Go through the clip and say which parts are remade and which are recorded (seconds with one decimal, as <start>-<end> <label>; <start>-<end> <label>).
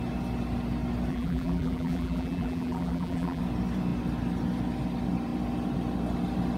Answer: 0.0-1.1 recorded; 1.1-3.4 remade; 3.4-6.6 recorded